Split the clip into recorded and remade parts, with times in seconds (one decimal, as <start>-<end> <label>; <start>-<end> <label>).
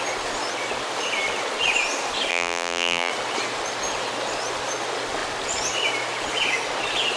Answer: 0.0-2.3 recorded; 2.3-3.1 remade; 3.1-7.2 recorded